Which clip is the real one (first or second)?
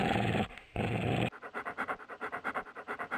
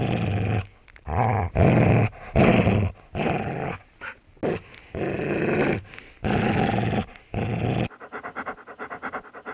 second